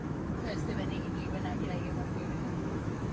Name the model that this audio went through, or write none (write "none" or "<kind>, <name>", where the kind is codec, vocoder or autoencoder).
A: autoencoder, DAC-VAE